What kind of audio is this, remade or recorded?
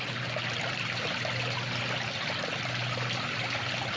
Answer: recorded